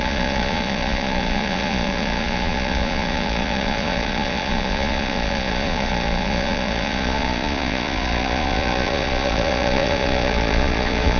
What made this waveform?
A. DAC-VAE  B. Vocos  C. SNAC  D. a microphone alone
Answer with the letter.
B